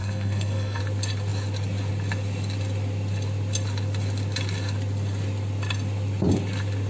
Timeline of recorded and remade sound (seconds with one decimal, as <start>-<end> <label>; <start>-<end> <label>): 0.0-0.8 remade; 0.8-6.9 recorded